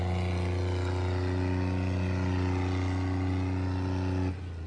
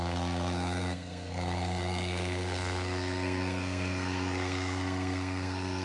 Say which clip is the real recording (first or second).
first